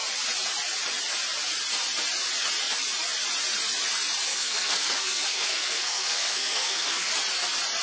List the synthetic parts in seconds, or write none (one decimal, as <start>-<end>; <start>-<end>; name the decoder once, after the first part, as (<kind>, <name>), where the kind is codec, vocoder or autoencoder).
4.3-7.1 (codec, SNAC)